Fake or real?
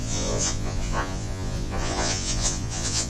fake